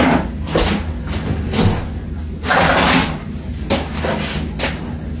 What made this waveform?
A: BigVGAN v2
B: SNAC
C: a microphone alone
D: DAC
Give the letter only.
C